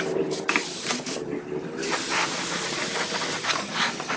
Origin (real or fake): real